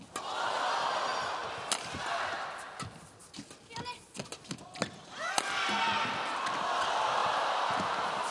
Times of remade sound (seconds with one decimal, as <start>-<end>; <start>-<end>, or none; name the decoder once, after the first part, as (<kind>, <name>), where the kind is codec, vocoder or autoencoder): 7.2-8.3 (vocoder, BigVGAN v2)